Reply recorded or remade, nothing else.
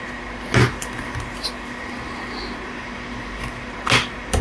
recorded